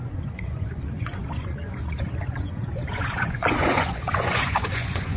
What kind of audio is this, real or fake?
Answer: fake